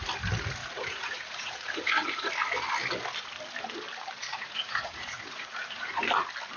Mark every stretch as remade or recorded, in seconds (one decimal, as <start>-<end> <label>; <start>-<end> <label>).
0.0-0.6 recorded; 0.6-2.3 remade; 2.3-4.2 recorded; 4.2-6.0 remade; 6.0-6.6 recorded